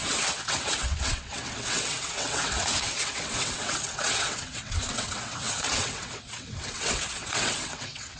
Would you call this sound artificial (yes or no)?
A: yes